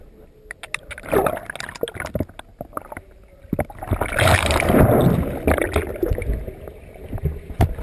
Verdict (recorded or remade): recorded